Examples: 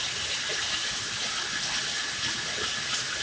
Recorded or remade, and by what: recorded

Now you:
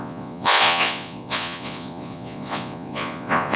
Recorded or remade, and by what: remade, vocoder, Vocos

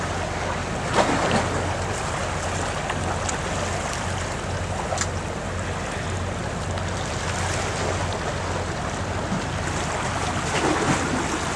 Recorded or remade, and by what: recorded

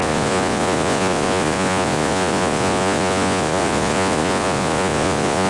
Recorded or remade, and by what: remade, vocoder, Vocos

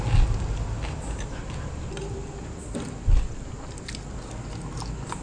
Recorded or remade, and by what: recorded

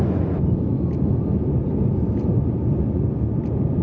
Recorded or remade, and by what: recorded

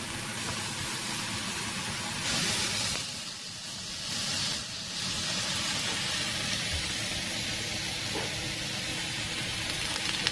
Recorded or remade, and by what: recorded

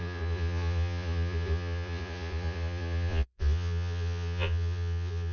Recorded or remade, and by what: remade, vocoder, Vocos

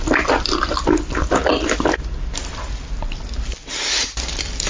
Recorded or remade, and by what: recorded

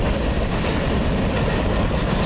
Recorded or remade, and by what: recorded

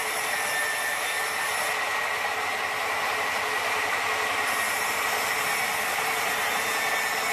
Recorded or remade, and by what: recorded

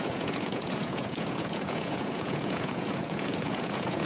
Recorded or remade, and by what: remade, vocoder, Vocos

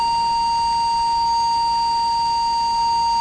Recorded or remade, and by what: recorded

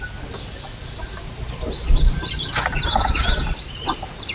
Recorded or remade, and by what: recorded